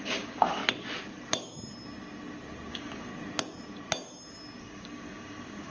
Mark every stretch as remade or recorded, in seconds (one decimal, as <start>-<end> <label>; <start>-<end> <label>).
0.0-0.6 remade; 0.6-2.7 recorded; 2.7-3.1 remade; 3.1-4.6 recorded; 4.6-5.7 remade